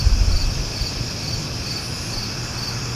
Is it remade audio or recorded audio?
recorded